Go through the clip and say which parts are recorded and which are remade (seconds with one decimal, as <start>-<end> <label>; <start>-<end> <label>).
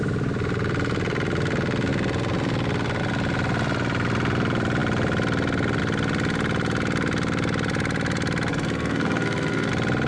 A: 0.0-8.5 recorded; 8.5-9.7 remade; 9.7-10.1 recorded